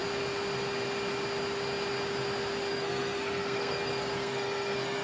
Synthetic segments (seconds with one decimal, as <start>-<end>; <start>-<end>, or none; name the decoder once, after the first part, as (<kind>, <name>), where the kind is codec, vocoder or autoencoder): 2.7-5.0 (codec, SNAC)